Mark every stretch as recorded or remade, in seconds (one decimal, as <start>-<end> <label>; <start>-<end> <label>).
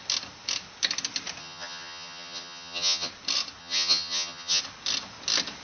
0.0-1.4 recorded; 1.4-3.1 remade; 3.1-3.6 recorded; 3.6-4.6 remade; 4.6-5.6 recorded